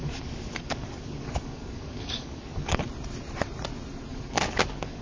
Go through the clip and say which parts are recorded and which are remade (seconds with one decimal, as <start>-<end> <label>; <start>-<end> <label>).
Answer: 0.0-2.8 remade; 2.8-4.1 recorded; 4.1-5.0 remade